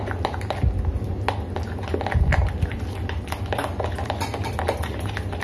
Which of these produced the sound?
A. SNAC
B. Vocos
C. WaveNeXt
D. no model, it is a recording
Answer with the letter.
D